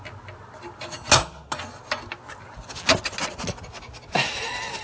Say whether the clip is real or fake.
real